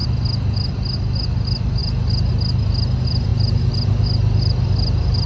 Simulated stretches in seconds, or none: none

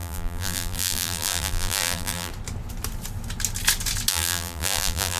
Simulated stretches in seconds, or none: 0.0-2.3 (vocoder, BigVGAN v2); 4.1-5.2